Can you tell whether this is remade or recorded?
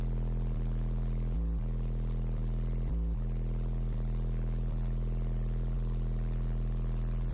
recorded